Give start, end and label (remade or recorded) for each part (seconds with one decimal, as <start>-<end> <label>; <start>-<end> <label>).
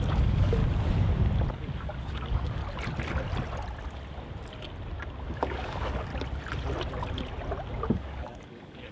0.0-0.6 remade; 0.6-1.5 recorded; 1.5-2.6 remade; 2.6-5.2 recorded; 5.2-6.1 remade; 6.1-7.9 recorded; 7.9-8.9 remade